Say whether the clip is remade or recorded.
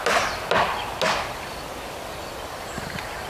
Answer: recorded